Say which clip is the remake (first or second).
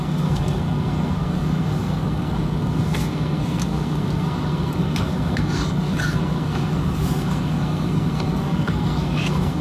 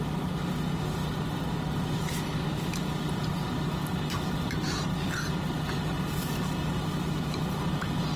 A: first